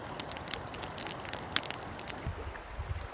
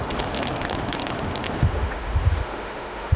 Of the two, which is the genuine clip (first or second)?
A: first